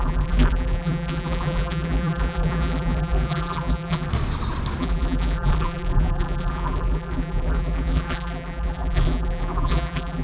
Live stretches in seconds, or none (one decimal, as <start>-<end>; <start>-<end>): 4.1-4.8